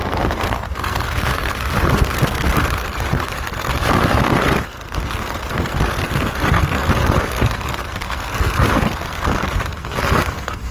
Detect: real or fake fake